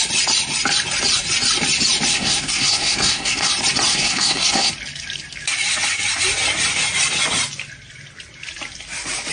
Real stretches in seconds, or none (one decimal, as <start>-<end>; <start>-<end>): 0.0-2.1; 3.5-3.9; 4.7-9.3